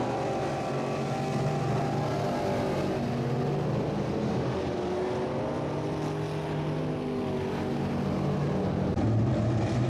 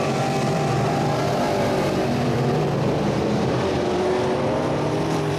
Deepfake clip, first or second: second